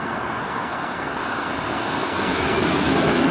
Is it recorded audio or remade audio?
remade